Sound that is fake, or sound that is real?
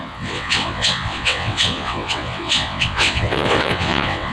fake